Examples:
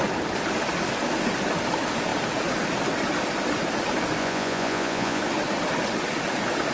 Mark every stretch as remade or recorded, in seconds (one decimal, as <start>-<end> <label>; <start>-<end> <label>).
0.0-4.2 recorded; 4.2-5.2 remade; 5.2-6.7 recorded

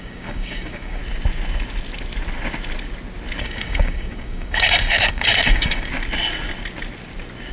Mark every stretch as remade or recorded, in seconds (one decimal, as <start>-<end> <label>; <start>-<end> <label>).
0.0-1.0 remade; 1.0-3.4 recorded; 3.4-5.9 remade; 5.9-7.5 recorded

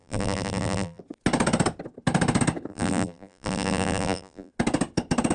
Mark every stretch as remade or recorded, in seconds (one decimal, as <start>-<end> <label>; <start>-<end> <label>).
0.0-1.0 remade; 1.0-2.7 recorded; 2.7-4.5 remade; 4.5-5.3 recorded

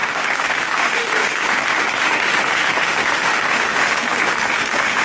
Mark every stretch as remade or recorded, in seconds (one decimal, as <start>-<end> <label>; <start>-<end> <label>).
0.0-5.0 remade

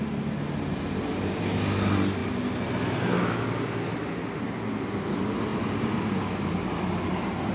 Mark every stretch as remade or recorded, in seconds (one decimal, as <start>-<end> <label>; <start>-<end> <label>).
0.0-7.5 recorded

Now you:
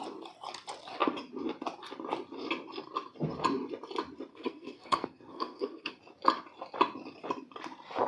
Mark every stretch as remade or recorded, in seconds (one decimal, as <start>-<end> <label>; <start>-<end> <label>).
0.0-4.3 recorded; 4.3-6.0 remade; 6.0-8.1 recorded

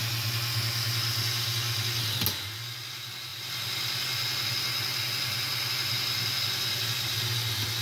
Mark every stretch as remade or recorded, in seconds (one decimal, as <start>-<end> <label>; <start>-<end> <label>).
0.0-7.8 recorded

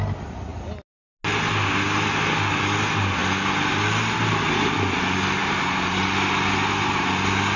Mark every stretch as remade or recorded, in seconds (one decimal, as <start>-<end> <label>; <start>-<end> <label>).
0.0-5.4 recorded; 5.4-6.0 remade; 6.0-7.6 recorded